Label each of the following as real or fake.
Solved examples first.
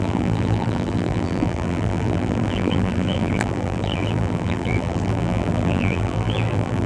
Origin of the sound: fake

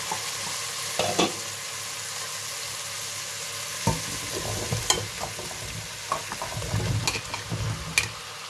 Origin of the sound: real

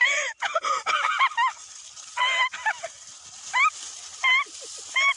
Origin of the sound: real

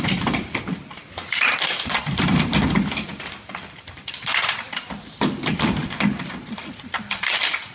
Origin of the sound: real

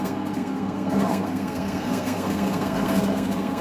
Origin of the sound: fake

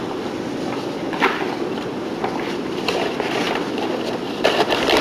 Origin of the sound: fake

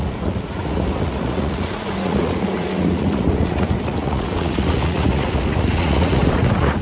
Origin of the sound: fake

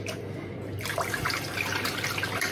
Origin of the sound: real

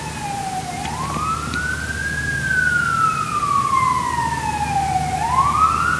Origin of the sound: real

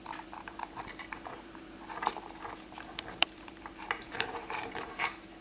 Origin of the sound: fake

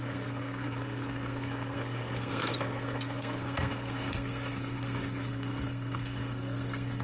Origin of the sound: fake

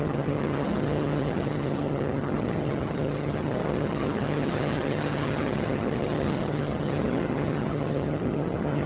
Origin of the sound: fake